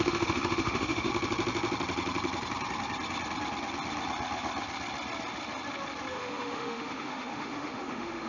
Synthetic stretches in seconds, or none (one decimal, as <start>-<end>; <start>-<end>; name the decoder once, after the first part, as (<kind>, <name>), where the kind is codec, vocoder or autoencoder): 0.0-1.1 (autoencoder, DAC-VAE); 6.1-8.3